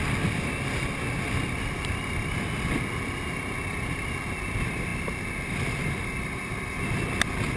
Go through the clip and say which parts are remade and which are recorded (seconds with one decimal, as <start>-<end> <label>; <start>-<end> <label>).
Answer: 0.0-7.6 recorded